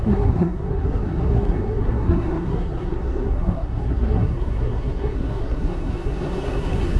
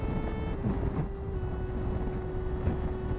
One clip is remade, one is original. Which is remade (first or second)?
first